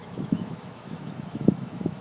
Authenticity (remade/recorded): remade